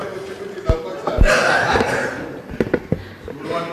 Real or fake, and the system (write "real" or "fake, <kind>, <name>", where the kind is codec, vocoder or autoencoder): real